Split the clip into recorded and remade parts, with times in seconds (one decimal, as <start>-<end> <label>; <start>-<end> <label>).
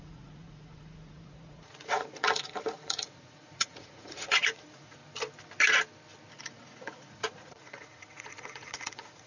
0.0-5.0 remade; 5.0-6.3 recorded; 6.3-9.3 remade